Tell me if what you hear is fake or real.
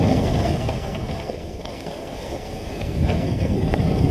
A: fake